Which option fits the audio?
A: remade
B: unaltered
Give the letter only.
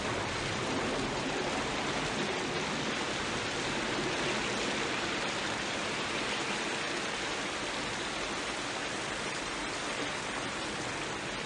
B